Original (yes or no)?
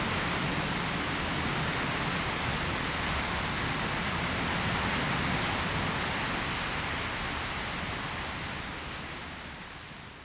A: yes